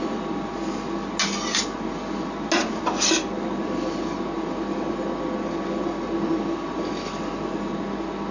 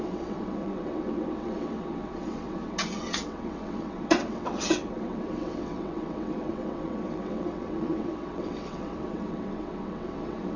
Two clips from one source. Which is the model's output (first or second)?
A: second